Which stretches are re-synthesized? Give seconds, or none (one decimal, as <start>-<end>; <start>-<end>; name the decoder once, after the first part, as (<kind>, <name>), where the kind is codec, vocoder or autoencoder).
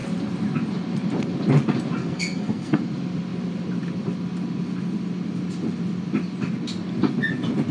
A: 2.0-2.8 (codec, SNAC)